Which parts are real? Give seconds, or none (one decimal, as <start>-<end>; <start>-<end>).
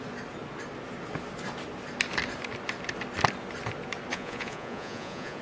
0.0-4.1